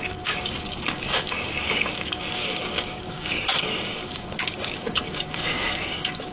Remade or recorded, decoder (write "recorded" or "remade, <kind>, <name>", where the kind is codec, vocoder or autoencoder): remade, codec, DAC